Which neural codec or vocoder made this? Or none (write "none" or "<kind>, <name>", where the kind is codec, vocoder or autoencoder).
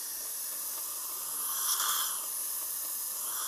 none